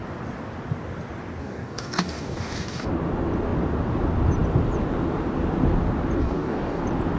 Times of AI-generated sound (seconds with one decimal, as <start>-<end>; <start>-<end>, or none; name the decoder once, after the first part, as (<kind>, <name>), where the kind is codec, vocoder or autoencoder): 1.4-2.9 (codec, DAC); 6.2-6.8